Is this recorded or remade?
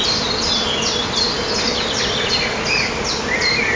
recorded